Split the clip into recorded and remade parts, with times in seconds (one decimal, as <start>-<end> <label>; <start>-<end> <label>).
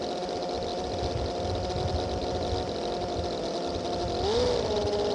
0.0-5.1 recorded